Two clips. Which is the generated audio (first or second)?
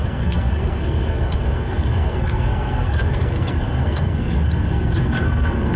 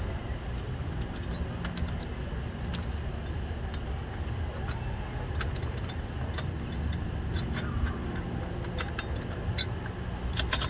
first